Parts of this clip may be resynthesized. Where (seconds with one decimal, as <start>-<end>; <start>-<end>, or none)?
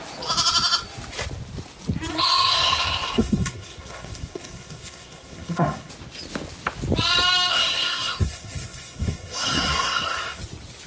2.1-5.9; 7.5-10.4